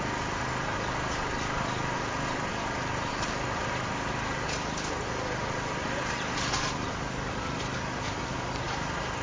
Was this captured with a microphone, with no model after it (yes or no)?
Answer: yes